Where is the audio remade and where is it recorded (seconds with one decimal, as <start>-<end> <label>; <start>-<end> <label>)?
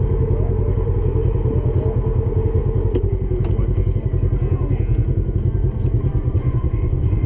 0.0-6.1 recorded; 6.1-7.3 remade